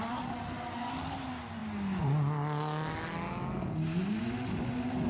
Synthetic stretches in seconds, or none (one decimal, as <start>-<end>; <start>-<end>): none